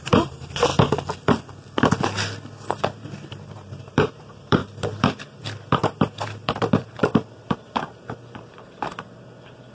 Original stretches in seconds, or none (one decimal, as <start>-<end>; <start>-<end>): 0.7-2.8